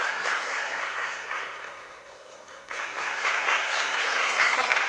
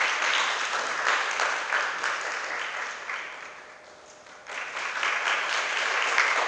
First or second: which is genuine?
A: second